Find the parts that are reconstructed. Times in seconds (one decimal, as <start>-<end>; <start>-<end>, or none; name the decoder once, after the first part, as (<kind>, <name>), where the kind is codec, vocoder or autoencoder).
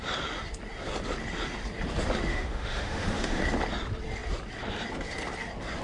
2.3-3.4 (autoencoder, DAC-VAE)